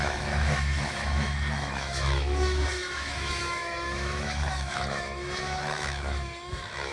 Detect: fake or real fake